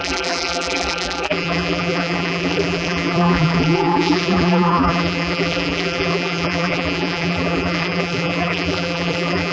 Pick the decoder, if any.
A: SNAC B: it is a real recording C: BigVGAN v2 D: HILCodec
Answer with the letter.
C